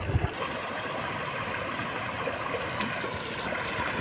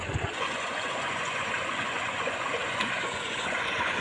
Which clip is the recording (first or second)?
first